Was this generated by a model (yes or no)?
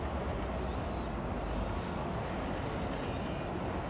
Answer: no